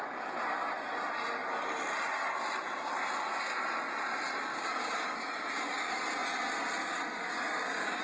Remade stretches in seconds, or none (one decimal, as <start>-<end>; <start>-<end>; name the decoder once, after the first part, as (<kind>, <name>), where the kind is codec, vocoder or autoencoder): 4.5-5.9 (codec, DAC); 6.8-8.0